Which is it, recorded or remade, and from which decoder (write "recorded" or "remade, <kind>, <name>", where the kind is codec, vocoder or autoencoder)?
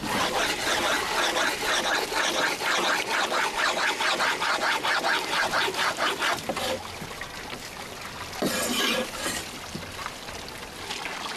recorded